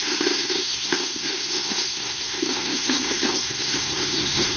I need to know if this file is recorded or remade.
remade